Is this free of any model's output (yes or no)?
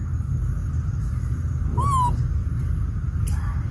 yes